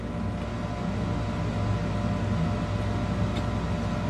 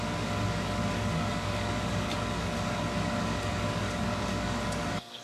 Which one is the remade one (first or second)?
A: second